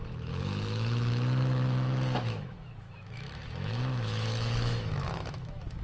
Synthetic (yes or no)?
yes